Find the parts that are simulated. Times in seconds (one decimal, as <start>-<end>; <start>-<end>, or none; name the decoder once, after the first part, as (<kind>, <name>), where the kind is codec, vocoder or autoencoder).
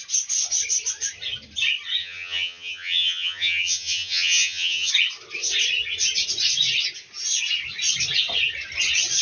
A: 2.0-4.9 (vocoder, HiFi-GAN)